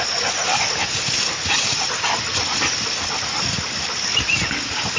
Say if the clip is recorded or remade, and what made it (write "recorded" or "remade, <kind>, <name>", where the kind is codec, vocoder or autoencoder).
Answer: recorded